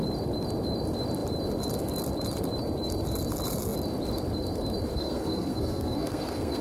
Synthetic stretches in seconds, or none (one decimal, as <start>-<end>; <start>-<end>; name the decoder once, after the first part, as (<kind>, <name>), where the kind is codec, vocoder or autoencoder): 4.9-6.6 (codec, SNAC)

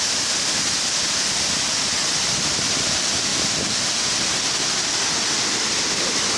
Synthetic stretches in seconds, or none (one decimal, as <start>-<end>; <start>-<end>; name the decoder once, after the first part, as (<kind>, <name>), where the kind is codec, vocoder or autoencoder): none

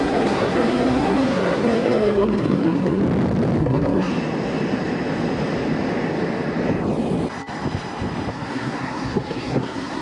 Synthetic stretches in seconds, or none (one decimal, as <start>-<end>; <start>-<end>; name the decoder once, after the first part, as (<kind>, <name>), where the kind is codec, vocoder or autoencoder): 0.0-3.0 (codec, SNAC); 3.6-4.1; 8.3-10.0